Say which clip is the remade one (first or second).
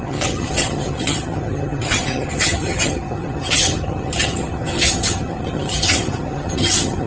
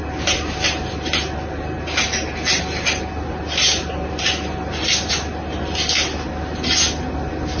first